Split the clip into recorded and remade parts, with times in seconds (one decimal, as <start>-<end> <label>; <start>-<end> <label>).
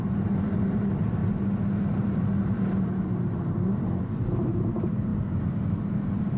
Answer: 0.0-1.2 remade; 1.2-4.0 recorded; 4.0-6.4 remade